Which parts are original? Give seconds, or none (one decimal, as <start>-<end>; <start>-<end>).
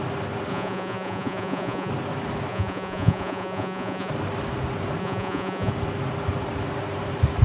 0.0-0.5; 1.9-2.5; 4.1-5.0; 5.7-7.4